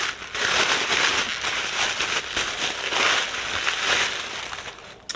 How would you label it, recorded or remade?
recorded